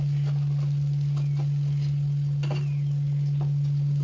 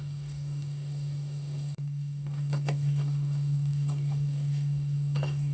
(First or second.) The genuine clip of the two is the first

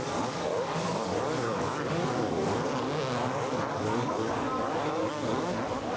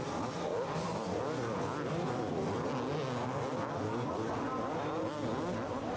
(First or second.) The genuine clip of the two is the second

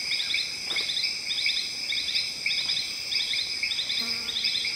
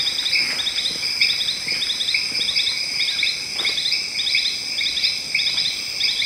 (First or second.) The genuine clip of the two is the second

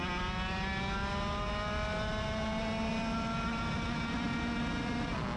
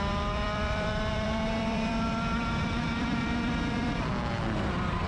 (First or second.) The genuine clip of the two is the first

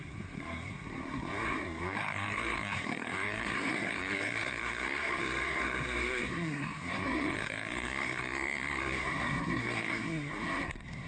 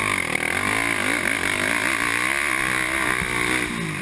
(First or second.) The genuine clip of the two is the second